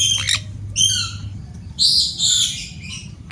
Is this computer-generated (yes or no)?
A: no